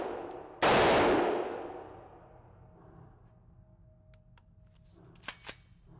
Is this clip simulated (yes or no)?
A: no